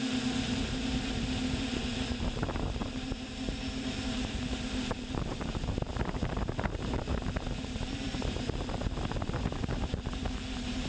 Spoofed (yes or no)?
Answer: yes